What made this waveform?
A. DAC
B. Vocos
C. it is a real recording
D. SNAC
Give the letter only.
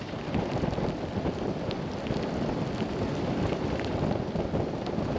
C